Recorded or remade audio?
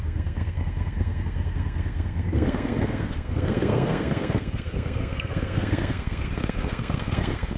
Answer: remade